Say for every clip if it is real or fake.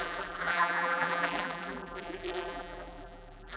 fake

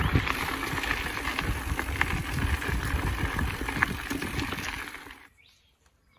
fake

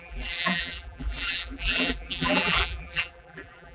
fake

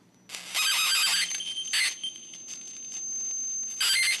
real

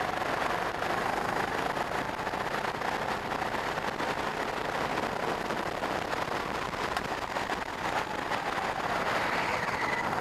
real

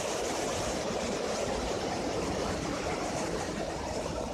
fake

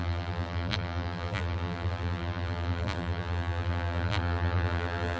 fake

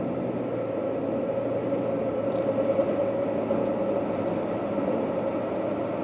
fake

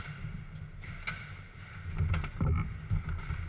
real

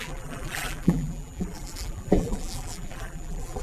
fake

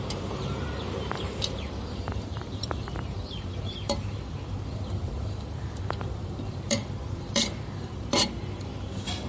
fake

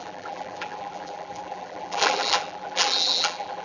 fake